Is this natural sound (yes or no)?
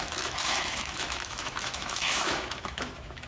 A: no